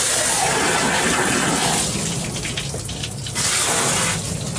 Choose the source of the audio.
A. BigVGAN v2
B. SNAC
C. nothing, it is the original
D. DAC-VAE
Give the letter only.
C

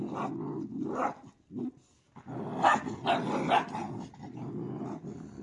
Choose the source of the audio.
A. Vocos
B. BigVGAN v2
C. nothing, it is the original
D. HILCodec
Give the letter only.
C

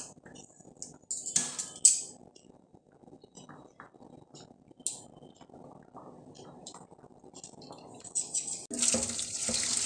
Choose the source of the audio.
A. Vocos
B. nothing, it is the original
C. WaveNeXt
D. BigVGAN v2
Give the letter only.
B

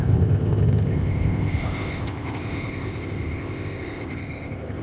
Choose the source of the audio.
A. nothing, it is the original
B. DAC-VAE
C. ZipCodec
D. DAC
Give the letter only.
C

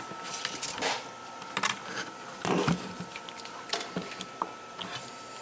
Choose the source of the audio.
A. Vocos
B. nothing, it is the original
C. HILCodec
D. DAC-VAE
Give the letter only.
B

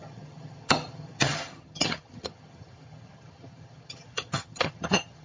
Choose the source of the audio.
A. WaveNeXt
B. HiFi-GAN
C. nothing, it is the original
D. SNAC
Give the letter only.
B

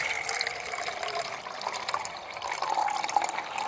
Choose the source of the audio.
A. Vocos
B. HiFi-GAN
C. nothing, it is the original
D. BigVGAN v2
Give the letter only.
C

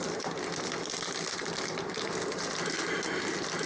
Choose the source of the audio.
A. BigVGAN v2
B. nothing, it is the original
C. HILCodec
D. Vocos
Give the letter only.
B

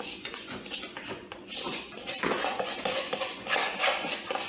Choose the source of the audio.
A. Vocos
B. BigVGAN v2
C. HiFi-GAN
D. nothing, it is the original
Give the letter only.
A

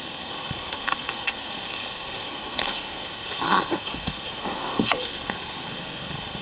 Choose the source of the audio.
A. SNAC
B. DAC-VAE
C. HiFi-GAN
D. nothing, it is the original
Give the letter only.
A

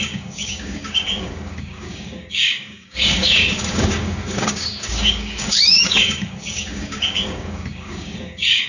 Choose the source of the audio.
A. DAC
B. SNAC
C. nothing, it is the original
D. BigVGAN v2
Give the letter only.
A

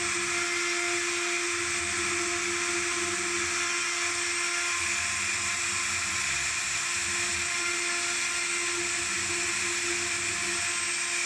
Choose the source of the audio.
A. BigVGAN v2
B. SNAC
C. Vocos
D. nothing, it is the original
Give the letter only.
D